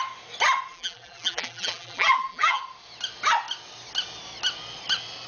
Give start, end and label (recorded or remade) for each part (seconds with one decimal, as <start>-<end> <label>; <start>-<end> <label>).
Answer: 0.0-0.7 recorded; 0.7-2.6 remade; 2.6-5.3 recorded